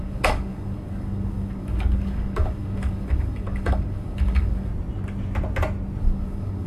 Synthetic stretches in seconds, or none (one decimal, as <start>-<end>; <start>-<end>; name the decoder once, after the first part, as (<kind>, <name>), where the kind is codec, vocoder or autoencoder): 0.0-4.7 (codec, DAC); 6.0-6.7